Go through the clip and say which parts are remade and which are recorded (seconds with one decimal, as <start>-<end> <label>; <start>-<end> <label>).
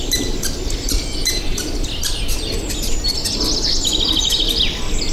0.0-5.1 recorded